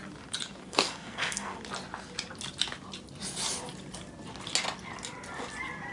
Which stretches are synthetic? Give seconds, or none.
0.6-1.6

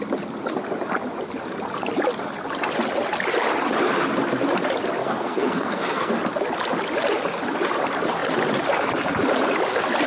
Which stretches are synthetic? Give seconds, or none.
5.0-6.1

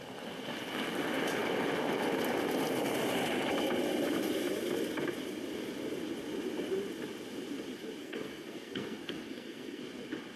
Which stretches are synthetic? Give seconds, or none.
8.0-9.8

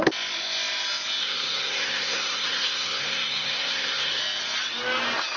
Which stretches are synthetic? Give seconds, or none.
1.2-4.2

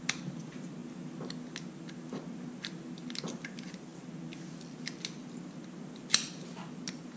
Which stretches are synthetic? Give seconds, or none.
none

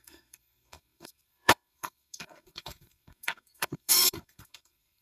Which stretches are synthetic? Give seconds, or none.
0.0-5.0

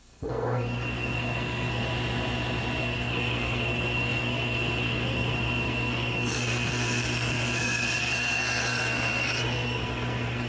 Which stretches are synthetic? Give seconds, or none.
0.0-1.8; 2.8-10.5